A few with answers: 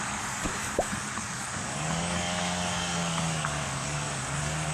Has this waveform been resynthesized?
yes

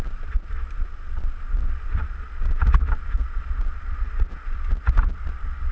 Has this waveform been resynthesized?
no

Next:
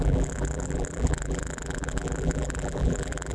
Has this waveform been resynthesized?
yes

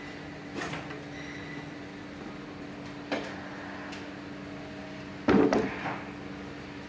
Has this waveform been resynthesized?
no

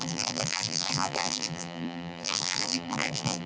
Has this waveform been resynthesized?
yes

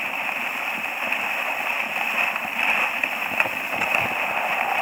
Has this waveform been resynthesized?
no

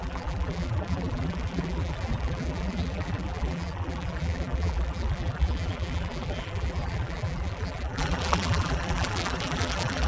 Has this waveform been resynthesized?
yes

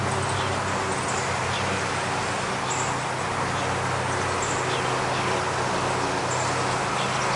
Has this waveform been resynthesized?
no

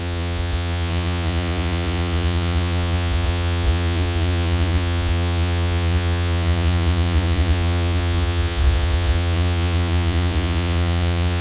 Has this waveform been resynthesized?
yes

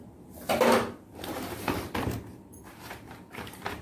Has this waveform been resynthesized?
no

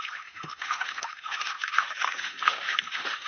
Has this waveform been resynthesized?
yes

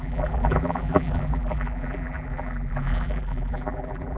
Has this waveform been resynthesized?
yes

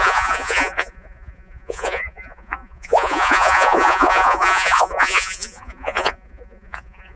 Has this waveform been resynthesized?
yes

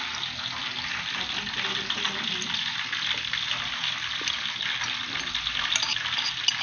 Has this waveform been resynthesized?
no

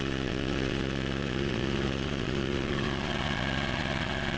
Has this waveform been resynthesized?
yes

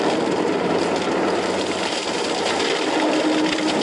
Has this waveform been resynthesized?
no